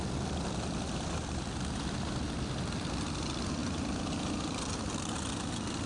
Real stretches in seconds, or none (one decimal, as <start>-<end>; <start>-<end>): 0.0-5.9